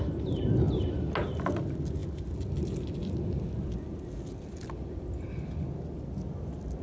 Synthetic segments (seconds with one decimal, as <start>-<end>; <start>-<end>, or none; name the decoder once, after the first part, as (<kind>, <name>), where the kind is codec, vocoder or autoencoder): none